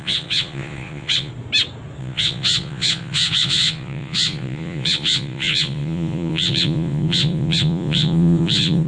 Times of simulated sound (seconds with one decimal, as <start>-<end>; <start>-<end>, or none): 0.0-1.3; 2.0-8.9

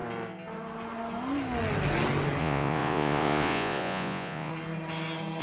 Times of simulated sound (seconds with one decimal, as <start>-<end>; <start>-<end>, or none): 2.4-4.5

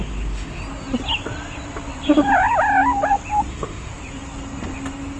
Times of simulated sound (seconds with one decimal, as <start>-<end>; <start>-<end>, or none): 0.0-0.6; 3.5-3.9